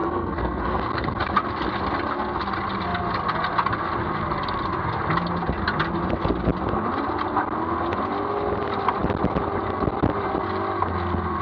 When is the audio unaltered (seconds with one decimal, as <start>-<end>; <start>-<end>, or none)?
1.2-11.4